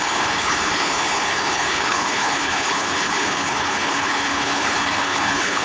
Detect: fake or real fake